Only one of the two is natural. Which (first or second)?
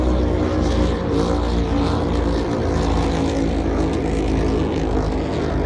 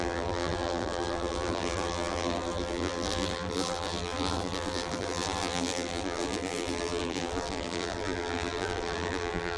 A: first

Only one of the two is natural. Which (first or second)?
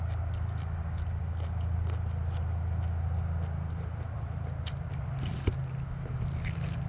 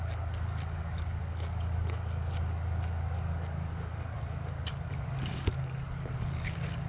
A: first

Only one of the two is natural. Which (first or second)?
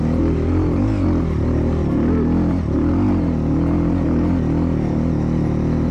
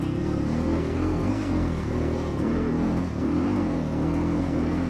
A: first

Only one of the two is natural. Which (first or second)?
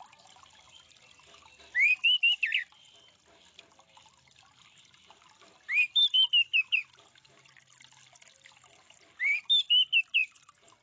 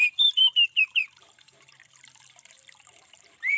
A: first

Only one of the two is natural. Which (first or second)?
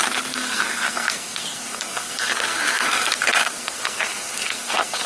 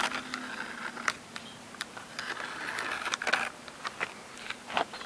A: second